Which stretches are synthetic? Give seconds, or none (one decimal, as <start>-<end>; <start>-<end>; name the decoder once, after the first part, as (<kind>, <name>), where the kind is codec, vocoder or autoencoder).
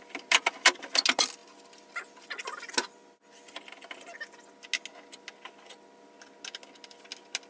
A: none